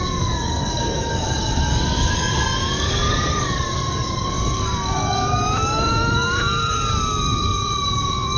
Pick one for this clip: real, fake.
fake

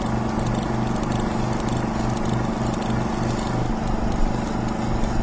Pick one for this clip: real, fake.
real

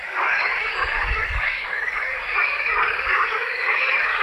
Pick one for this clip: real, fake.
fake